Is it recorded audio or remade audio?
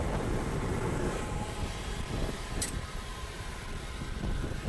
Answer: remade